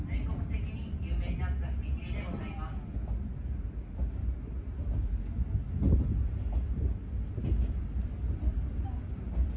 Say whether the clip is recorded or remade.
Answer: recorded